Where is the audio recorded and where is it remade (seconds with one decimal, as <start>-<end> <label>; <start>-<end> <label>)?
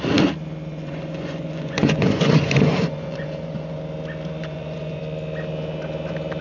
0.0-0.7 recorded; 0.7-3.8 remade; 3.8-4.4 recorded; 4.4-5.0 remade; 5.0-6.4 recorded